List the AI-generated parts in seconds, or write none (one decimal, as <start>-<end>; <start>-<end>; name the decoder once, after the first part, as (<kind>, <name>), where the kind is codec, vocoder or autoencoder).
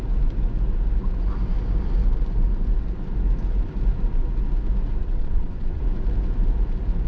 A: 5.0-5.8 (vocoder, WaveNeXt)